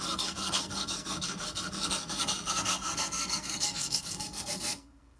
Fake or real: fake